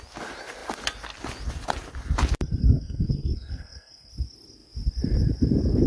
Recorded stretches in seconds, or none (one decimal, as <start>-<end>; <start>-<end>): 0.0-2.6; 4.1-5.9